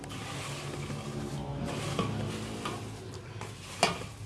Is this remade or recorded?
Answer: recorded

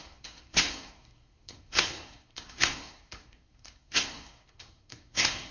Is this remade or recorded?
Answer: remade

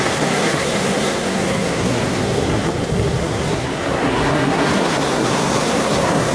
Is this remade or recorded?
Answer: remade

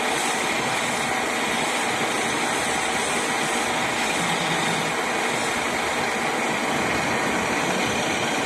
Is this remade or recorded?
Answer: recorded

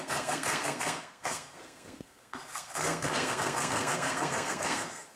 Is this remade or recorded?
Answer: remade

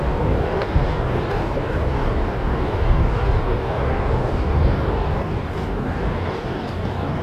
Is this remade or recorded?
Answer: remade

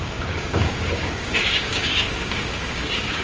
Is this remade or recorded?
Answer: remade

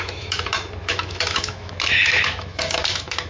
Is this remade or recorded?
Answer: remade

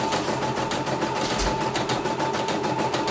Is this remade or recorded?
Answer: recorded